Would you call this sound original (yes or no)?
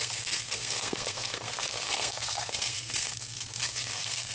no